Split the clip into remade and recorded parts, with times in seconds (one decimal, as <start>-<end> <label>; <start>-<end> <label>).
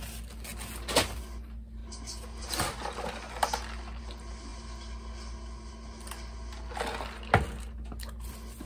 0.0-8.7 recorded